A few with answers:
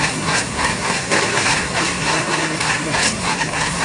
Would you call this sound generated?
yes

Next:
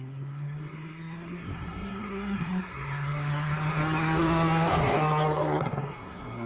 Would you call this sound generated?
yes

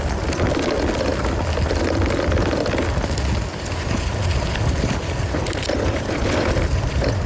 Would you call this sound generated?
no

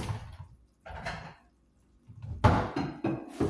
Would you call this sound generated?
no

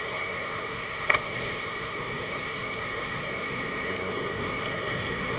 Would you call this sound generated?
yes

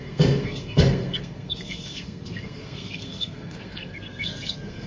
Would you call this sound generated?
yes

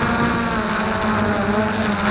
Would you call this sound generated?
no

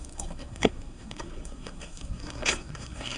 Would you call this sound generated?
yes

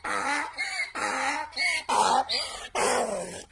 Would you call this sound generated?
no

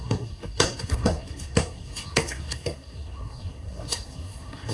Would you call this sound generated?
yes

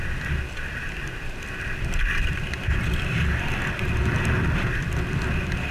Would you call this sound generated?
no